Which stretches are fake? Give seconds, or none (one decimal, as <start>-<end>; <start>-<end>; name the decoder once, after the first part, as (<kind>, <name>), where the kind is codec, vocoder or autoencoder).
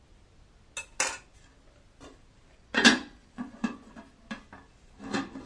2.5-3.9 (vocoder, Vocos)